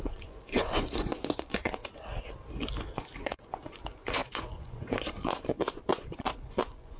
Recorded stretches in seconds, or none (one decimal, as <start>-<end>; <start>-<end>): 1.8-3.0